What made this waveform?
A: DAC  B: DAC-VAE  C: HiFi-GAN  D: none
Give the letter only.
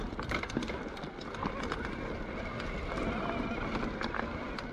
D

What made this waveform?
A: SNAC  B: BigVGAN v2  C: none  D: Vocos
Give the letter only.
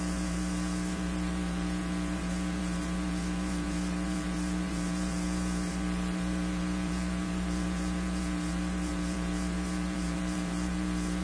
B